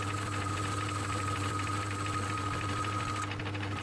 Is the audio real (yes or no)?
yes